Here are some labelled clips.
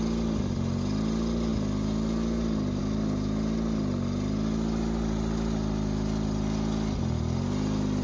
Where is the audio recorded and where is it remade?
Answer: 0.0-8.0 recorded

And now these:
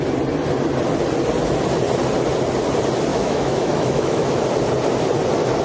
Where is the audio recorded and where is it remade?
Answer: 0.0-3.1 recorded; 3.1-4.3 remade; 4.3-5.6 recorded

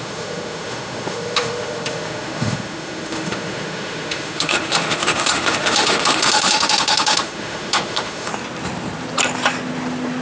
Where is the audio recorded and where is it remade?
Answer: 0.0-8.3 remade; 8.3-10.2 recorded

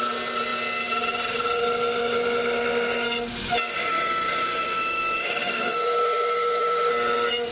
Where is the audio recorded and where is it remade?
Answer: 0.0-3.7 recorded; 3.7-6.9 remade; 6.9-7.5 recorded